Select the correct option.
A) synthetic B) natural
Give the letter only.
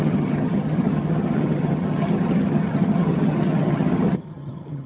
A